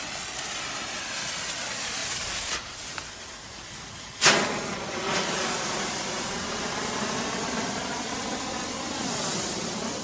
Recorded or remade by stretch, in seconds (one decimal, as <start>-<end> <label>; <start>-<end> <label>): 0.0-10.0 recorded